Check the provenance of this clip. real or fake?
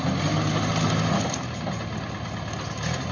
real